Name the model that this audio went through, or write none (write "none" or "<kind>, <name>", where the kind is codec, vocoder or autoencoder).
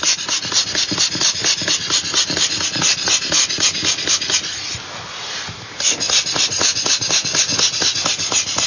none